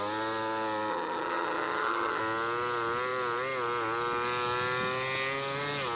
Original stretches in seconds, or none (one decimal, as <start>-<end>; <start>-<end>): 0.0-0.9; 2.2-6.0